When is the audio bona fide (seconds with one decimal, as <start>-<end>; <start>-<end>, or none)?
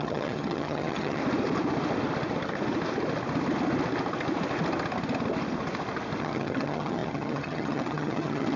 1.2-6.2